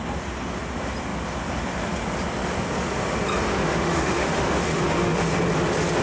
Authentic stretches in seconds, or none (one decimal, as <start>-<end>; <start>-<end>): 0.0-3.5; 5.3-6.0